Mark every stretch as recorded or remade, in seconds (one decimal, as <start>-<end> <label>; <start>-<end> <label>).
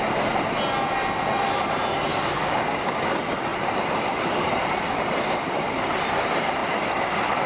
0.0-2.1 recorded; 2.1-3.1 remade; 3.1-7.5 recorded